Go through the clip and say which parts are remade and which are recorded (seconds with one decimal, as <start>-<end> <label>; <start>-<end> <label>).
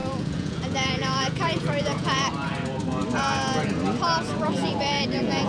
0.0-2.3 remade; 2.3-4.4 recorded; 4.4-5.5 remade